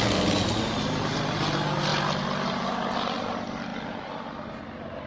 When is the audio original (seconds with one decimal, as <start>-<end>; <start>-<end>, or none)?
0.0-5.1